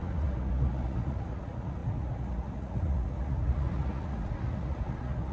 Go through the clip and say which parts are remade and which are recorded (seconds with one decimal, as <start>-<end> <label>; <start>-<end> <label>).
0.0-5.3 remade